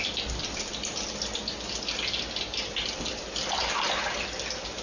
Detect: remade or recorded recorded